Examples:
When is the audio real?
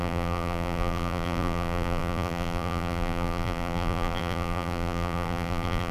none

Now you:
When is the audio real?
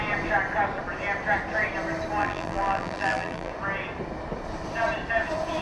0.0-2.2; 3.5-5.6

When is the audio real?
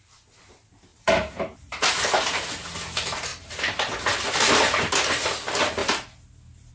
0.0-0.9; 2.2-5.8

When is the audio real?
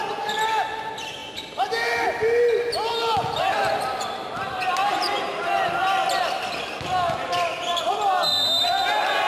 0.0-4.9; 5.5-9.3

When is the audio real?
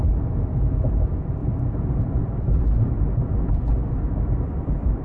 0.0-5.0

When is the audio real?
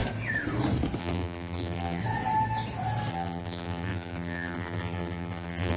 0.0-1.0; 2.0-3.1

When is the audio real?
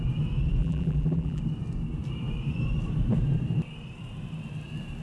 0.0-0.6; 1.4-5.0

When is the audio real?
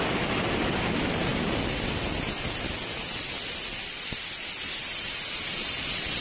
0.0-6.2